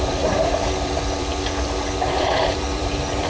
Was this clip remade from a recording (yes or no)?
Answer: yes